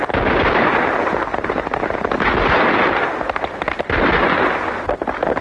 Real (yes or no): yes